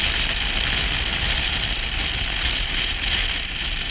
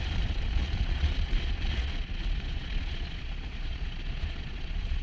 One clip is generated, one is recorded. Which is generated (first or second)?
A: second